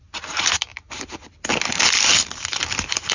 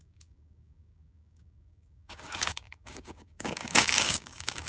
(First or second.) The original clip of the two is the first